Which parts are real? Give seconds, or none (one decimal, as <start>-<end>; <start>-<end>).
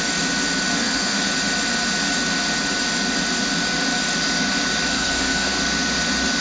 0.0-0.7; 1.3-4.9; 5.6-6.4